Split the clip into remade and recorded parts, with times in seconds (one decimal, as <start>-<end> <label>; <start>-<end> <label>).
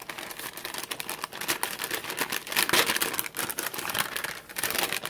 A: 0.0-5.1 recorded